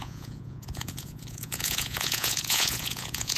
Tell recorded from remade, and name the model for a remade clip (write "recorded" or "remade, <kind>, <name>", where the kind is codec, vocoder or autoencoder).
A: remade, vocoder, Vocos